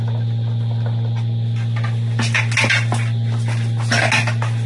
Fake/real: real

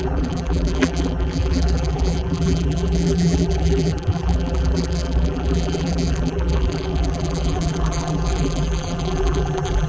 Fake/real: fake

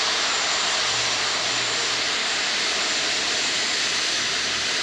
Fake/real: fake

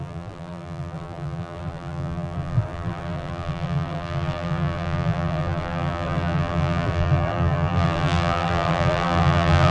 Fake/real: fake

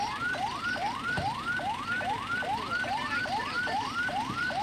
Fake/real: fake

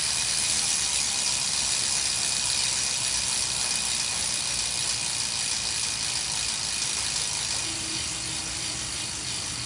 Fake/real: real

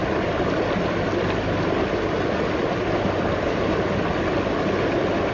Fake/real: real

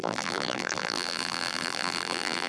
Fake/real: fake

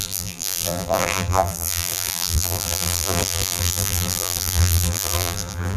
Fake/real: fake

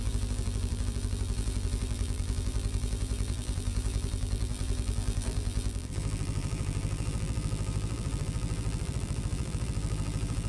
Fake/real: fake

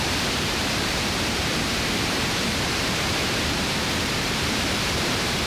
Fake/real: fake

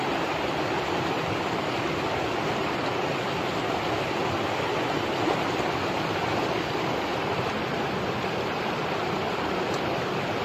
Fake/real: real